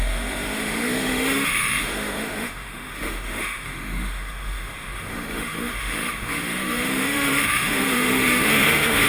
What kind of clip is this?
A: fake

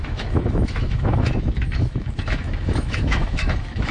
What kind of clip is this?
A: fake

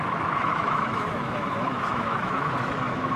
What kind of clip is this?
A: fake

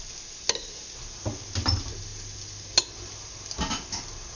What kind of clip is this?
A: real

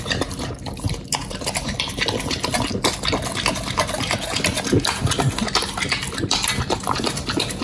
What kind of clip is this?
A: real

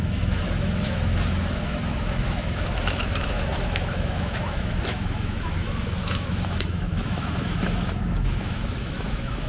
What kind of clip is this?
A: fake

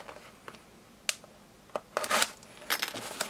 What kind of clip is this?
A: real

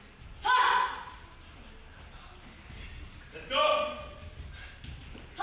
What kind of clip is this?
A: real